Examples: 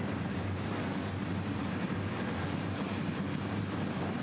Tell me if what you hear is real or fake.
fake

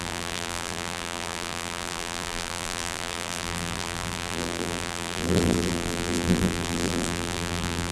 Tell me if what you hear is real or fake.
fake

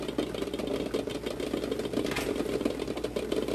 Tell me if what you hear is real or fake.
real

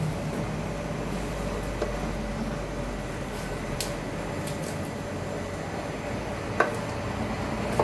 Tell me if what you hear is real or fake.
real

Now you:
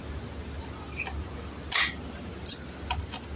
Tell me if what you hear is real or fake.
real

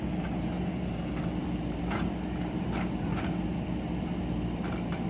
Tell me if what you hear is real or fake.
fake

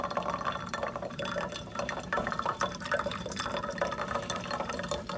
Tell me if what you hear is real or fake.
fake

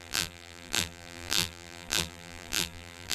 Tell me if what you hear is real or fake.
fake